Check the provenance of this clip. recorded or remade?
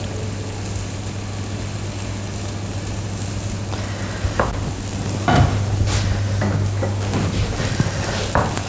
recorded